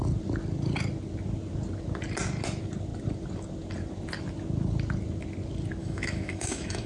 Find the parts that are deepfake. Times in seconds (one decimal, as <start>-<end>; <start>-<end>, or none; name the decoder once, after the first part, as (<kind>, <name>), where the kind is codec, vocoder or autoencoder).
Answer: 5.8-6.9 (autoencoder, DAC-VAE)